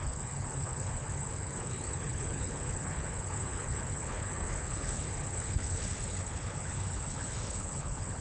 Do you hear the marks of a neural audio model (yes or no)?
yes